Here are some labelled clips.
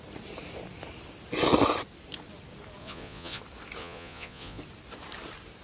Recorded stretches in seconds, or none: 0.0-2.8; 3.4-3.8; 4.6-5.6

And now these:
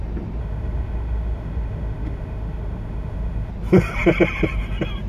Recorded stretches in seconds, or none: 0.0-0.4; 3.5-5.1

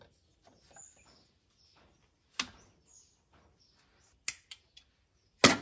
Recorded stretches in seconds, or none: 0.0-5.6